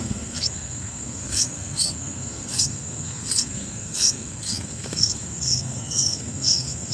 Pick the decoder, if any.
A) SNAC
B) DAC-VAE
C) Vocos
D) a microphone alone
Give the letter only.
A